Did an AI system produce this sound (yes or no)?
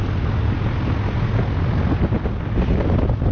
no